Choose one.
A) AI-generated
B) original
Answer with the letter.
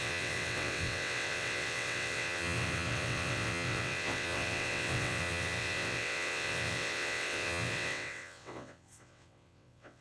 A